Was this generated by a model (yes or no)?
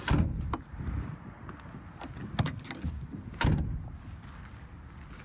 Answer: no